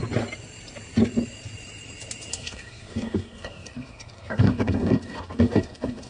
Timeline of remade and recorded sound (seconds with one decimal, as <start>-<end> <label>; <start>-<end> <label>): 0.0-2.3 recorded; 2.3-6.1 remade